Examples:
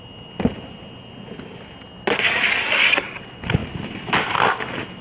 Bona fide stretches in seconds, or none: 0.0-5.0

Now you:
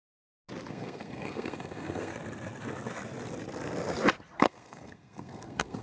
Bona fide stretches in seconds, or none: 0.0-0.7; 2.1-4.4

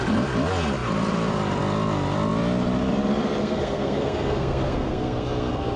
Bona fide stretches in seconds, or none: 0.0-3.4

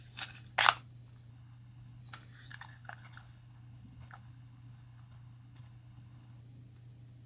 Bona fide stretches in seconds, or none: 0.0-1.3; 2.0-2.5; 6.4-7.3

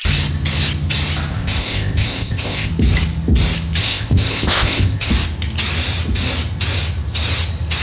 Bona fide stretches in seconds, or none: 0.0-1.3; 2.7-3.8; 5.1-7.8

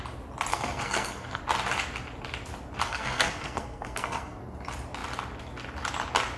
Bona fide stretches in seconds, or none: 0.0-0.5; 1.4-2.9; 4.4-6.4

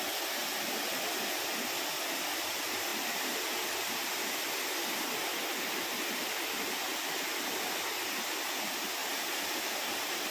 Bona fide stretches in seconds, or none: 0.0-10.3

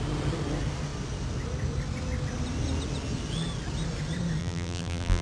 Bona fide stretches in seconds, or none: 0.0-4.4